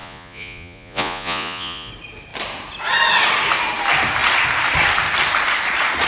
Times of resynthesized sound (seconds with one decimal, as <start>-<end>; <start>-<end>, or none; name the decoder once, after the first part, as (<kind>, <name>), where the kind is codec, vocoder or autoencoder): 0.0-1.9 (vocoder, Vocos)